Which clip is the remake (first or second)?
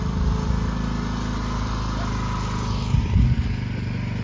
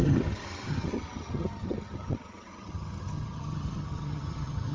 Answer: second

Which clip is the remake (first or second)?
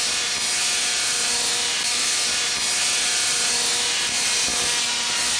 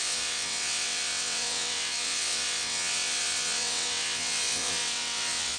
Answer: second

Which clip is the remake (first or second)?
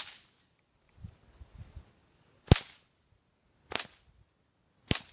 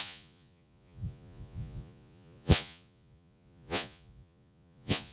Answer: second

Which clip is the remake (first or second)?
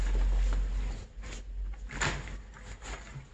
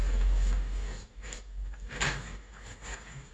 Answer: second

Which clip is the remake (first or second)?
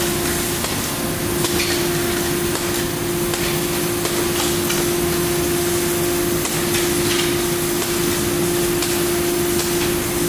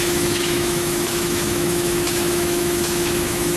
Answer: second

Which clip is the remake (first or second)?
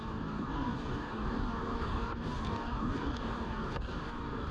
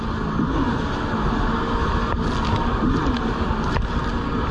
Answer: first